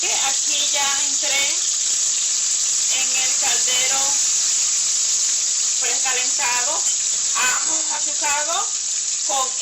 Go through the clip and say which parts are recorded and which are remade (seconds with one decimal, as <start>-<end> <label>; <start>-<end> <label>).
0.0-7.5 recorded; 7.5-8.0 remade; 8.0-9.6 recorded